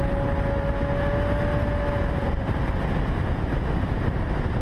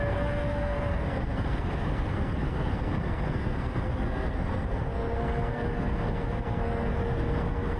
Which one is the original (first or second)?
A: first